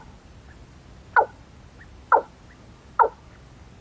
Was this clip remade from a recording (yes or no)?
no